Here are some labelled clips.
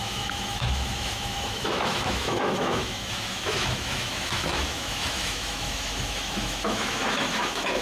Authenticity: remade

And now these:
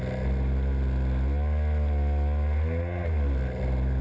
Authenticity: recorded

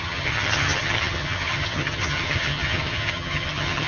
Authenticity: remade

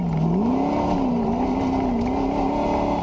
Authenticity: recorded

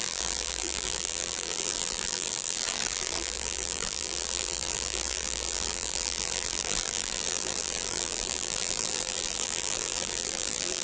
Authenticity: remade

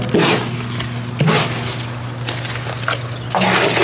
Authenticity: recorded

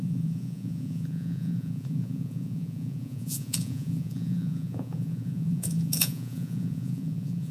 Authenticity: remade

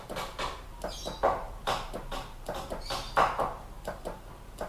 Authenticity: recorded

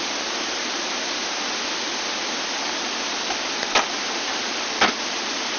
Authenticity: recorded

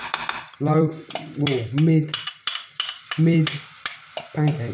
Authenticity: remade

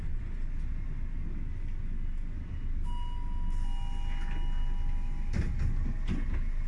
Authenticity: recorded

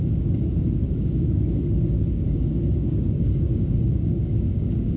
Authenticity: remade